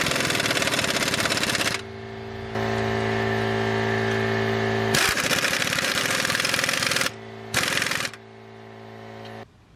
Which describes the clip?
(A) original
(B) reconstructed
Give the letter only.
A